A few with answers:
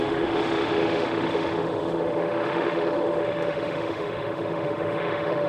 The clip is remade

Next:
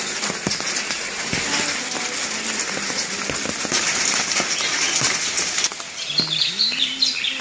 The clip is recorded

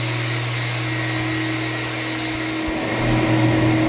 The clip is recorded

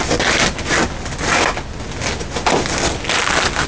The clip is recorded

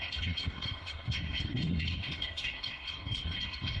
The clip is remade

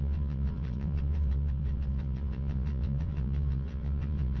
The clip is remade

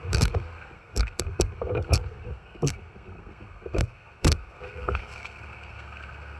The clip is remade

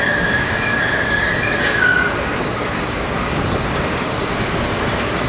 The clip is remade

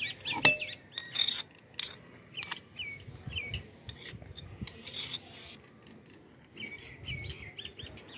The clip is recorded